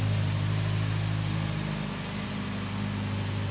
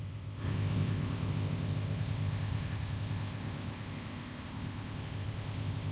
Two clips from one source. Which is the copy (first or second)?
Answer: second